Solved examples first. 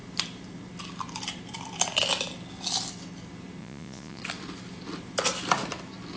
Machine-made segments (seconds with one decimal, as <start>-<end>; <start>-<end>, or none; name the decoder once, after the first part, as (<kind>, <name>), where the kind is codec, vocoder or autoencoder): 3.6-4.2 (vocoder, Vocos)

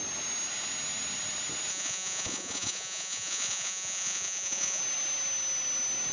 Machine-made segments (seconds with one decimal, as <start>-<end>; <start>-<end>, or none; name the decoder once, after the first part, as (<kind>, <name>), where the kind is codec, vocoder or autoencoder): 1.7-4.8 (vocoder, Vocos)

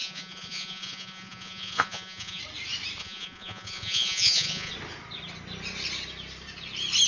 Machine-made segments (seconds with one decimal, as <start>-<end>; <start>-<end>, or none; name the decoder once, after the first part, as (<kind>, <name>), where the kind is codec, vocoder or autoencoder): 0.0-2.4 (vocoder, Vocos); 3.0-4.7